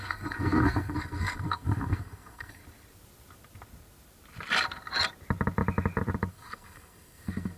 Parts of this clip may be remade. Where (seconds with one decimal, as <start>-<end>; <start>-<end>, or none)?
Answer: 0.0-2.6; 6.3-7.6